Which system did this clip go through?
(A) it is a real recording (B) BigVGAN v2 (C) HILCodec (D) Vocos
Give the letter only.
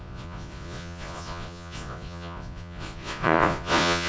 D